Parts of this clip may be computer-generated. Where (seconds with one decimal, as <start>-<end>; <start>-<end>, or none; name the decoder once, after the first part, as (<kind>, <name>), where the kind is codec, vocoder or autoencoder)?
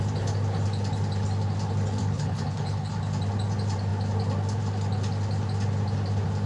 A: 2.0-2.9 (codec, HILCodec)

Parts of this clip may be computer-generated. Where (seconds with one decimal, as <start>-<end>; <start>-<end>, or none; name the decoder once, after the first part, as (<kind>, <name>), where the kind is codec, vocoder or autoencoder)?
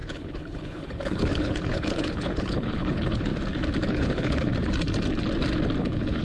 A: 0.0-3.3 (codec, HILCodec); 3.9-4.5; 5.8-6.2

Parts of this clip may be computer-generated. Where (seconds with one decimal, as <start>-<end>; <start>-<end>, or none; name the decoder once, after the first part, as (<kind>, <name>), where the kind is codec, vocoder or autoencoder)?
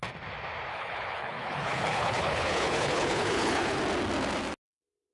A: 0.7-3.8 (codec, HILCodec)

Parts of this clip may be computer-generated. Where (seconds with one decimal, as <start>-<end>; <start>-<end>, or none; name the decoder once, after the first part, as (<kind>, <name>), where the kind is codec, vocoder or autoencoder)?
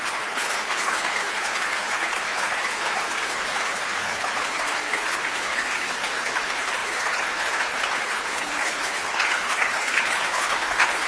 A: 0.0-11.1 (codec, HILCodec)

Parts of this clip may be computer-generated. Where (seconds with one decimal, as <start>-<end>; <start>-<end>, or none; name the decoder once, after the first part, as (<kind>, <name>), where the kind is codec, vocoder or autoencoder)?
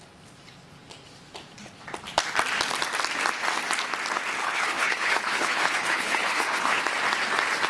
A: 4.4-6.8 (codec, HILCodec)